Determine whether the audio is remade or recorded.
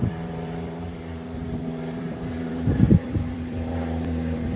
remade